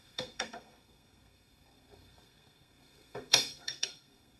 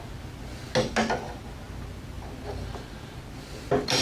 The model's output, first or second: first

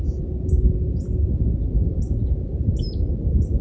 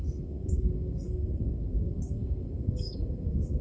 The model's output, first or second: second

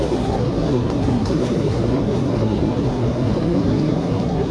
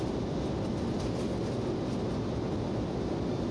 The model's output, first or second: first